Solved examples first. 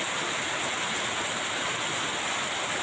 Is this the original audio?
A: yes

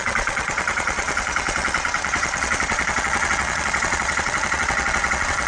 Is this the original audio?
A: no